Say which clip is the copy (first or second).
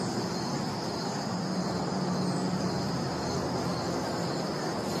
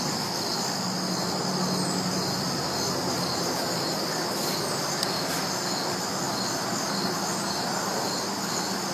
first